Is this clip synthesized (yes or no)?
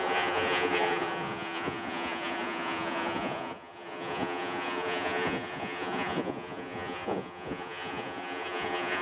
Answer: yes